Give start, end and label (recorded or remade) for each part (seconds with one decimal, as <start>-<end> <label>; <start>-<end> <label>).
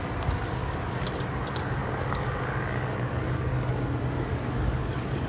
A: 0.0-0.6 recorded; 0.6-1.2 remade; 1.2-1.8 recorded; 1.8-3.7 remade; 3.7-4.3 recorded; 4.3-5.3 remade